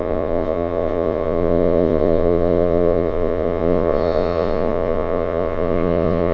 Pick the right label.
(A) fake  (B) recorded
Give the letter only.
A